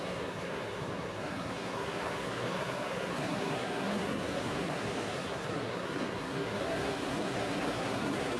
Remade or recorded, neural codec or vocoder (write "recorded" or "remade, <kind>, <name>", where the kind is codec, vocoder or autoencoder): remade, codec, SNAC